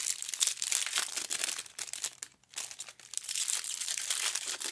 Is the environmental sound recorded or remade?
recorded